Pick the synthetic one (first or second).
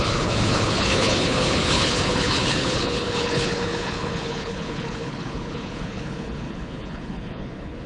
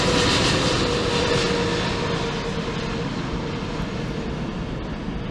first